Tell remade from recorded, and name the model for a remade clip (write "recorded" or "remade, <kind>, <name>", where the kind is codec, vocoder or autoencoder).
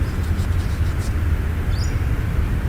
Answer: recorded